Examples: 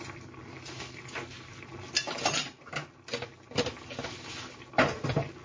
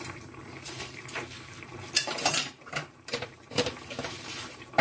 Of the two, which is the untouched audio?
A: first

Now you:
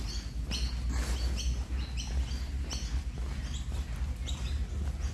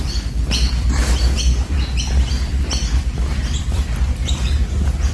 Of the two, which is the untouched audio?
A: first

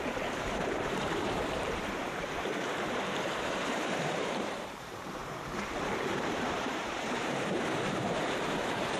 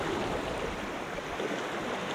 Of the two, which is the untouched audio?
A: second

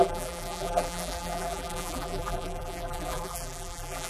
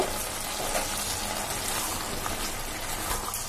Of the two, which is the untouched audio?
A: second